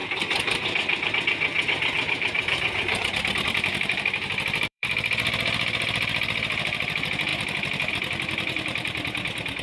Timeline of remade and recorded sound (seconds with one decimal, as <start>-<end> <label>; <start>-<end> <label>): 0.0-1.1 remade; 1.1-1.5 recorded; 1.5-4.9 remade; 4.9-9.6 recorded